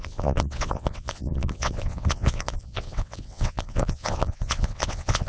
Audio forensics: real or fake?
fake